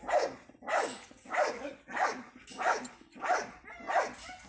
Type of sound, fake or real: real